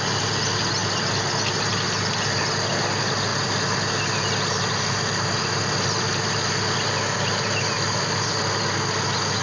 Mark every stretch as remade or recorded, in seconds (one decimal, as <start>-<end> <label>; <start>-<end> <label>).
0.0-9.4 recorded